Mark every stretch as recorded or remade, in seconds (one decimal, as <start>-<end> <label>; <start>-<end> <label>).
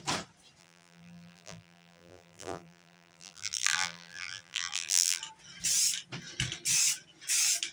0.0-0.6 recorded; 0.6-5.2 remade; 5.2-7.7 recorded